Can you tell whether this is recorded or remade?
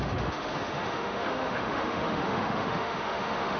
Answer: remade